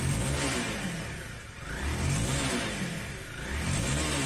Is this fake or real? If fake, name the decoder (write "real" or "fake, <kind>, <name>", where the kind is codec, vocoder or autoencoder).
real